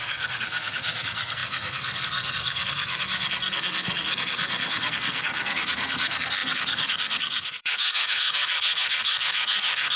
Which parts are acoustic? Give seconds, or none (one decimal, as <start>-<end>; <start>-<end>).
none